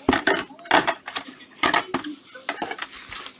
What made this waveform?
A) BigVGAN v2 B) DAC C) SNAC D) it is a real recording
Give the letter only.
D